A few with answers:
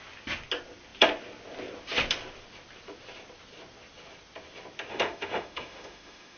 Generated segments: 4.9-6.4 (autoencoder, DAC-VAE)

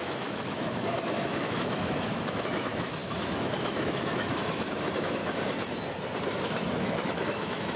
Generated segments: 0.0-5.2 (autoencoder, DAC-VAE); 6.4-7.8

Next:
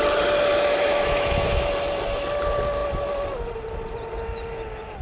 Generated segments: 0.5-1.7 (autoencoder, DAC-VAE)

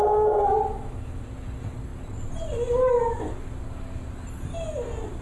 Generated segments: 0.7-1.2 (autoencoder, DAC-VAE)